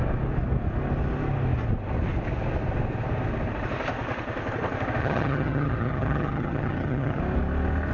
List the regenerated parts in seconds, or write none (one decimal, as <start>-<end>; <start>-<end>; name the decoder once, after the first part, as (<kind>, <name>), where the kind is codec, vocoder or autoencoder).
5.0-7.2 (vocoder, HiFi-GAN)